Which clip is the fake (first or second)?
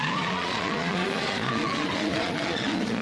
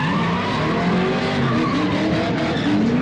first